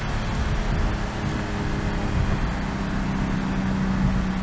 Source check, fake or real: real